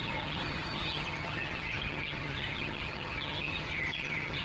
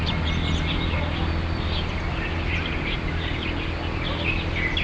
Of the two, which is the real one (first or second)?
second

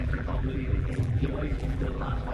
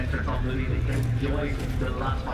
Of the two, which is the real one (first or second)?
second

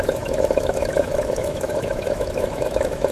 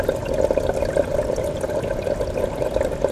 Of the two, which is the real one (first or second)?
second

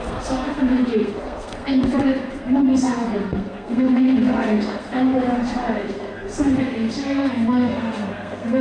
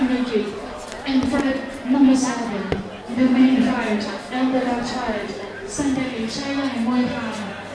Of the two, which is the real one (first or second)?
second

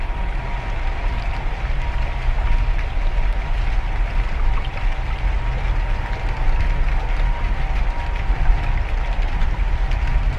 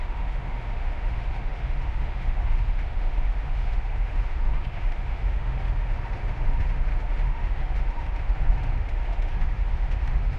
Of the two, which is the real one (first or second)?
first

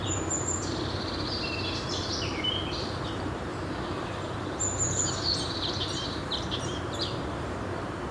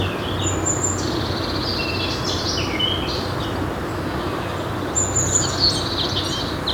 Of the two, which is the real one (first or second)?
second